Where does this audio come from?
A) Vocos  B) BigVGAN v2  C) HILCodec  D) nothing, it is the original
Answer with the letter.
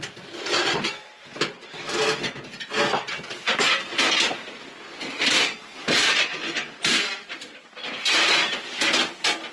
D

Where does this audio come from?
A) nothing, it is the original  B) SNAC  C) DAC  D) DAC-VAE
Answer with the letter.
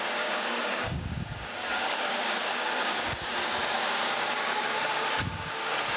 C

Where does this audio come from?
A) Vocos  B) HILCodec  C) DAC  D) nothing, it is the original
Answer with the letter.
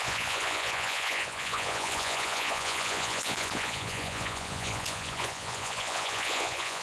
A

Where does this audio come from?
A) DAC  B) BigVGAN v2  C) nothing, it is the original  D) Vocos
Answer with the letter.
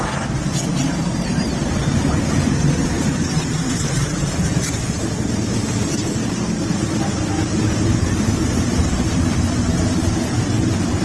B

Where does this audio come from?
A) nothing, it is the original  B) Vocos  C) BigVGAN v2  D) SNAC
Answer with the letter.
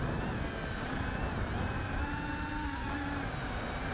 A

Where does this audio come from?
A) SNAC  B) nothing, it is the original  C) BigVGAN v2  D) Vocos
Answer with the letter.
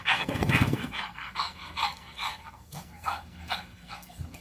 A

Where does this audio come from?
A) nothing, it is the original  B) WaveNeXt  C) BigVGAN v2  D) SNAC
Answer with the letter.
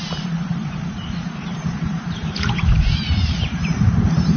C